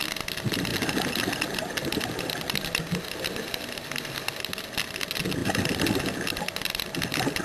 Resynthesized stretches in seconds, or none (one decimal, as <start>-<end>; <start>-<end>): none